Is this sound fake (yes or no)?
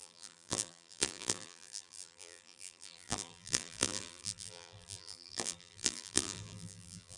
yes